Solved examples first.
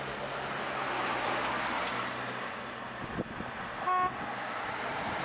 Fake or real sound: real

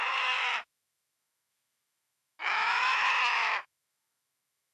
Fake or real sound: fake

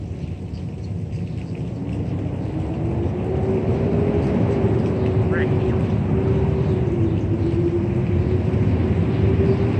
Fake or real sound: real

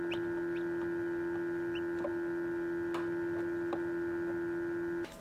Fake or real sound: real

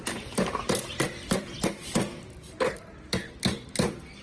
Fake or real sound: real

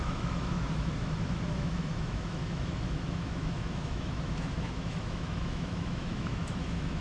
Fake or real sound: fake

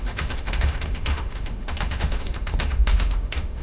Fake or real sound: fake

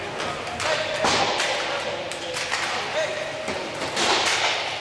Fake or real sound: real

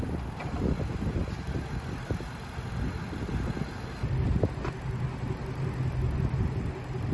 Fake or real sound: real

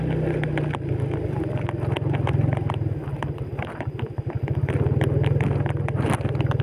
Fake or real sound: real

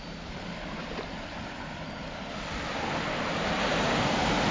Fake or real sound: real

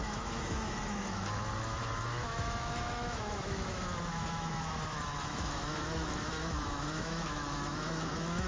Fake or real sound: fake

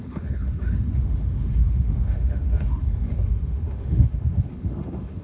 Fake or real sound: fake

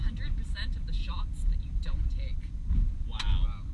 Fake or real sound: real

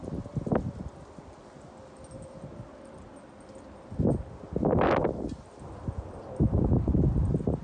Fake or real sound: real